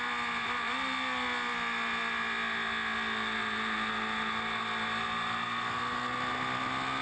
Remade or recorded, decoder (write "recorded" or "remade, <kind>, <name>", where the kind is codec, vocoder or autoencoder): recorded